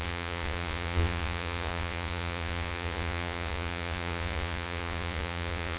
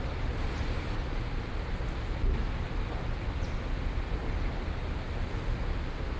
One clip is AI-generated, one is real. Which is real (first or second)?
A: second